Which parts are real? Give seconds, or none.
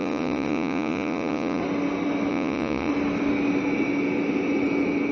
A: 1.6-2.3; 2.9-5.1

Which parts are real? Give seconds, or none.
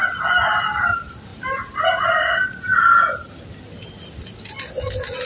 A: 0.0-5.2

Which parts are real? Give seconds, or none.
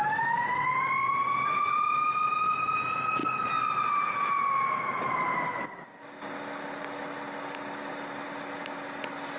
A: 0.0-9.4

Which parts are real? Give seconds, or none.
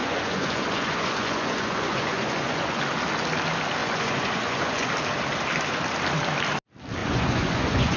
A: 2.8-3.8; 4.9-7.0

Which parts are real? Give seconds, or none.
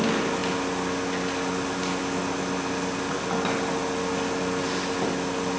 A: 0.0-5.6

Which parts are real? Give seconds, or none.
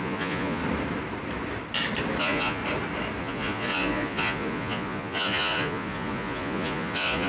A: 0.6-2.2; 2.6-3.2